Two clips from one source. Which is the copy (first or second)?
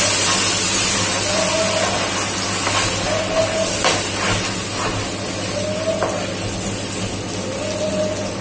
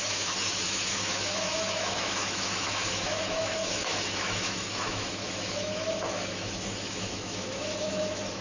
second